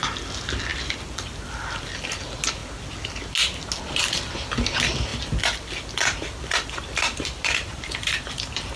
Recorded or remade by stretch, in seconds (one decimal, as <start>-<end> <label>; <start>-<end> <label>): 0.0-0.7 recorded; 0.7-1.9 remade; 1.9-5.1 recorded; 5.1-8.8 remade